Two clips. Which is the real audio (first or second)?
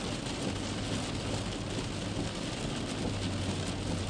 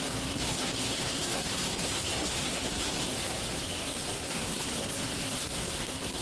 first